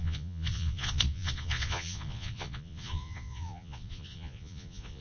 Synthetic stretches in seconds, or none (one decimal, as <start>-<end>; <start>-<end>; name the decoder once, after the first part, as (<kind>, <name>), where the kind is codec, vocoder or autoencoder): 0.0-5.0 (vocoder, Vocos)

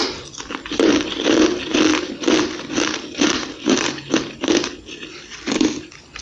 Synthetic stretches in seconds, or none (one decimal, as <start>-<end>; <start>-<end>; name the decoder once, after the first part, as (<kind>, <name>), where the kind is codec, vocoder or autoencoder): 0.0-1.2 (vocoder, BigVGAN v2); 1.9-4.7

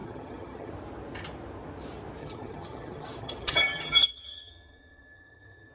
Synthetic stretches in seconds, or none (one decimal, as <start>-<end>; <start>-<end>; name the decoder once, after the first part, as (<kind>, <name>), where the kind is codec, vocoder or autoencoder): 0.0-0.7 (vocoder, HiFi-GAN); 2.2-5.7

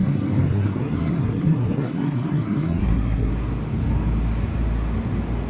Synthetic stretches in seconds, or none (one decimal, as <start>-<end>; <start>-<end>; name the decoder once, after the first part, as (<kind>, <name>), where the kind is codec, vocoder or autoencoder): 0.0-3.3 (codec, SNAC)

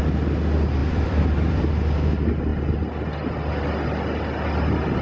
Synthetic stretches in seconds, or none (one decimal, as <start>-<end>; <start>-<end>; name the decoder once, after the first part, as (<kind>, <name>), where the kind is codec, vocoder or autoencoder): 0.8-1.7 (vocoder, BigVGAN v2)

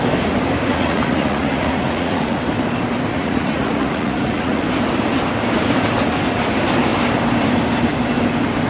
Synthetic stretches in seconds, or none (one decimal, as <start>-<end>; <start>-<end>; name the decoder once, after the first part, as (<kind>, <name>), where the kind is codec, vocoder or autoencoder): 0.7-2.4 (vocoder, Vocos); 3.1-4.6

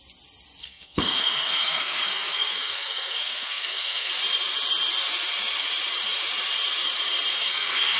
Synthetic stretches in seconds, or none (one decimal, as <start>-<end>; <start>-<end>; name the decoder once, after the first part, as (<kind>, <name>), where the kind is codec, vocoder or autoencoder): 0.6-4.1 (codec, SNAC); 7.3-8.0

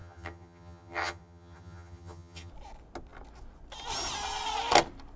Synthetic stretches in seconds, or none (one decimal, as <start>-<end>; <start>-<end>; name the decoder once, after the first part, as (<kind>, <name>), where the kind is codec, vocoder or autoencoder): 0.0-2.5 (vocoder, HiFi-GAN)